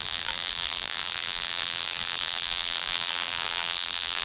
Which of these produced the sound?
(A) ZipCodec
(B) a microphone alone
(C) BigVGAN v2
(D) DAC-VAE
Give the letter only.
C